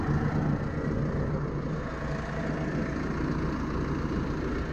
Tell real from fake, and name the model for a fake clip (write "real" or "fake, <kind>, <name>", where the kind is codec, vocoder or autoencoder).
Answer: real